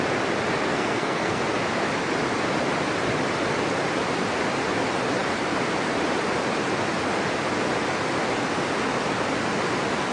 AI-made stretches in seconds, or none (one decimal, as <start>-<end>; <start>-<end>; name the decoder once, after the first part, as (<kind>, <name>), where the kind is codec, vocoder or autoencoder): 0.7-1.4 (codec, SNAC)